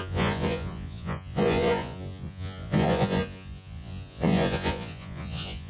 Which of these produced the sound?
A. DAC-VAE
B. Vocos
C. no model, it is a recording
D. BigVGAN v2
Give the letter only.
B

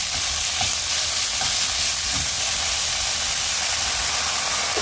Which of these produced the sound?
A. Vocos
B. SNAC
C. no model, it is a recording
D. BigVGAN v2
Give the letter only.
C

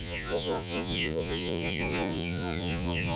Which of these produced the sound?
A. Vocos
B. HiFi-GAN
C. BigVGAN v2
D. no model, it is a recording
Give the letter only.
A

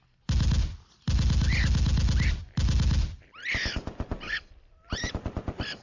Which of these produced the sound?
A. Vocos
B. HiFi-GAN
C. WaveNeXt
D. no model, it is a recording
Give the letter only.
D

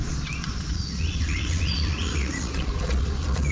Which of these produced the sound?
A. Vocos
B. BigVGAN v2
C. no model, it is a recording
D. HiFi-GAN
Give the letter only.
A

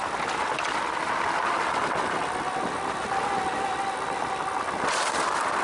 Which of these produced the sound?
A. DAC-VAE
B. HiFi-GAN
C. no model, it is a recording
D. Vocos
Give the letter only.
C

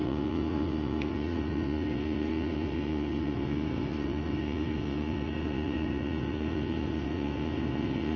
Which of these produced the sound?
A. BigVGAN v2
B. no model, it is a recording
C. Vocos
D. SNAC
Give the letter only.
C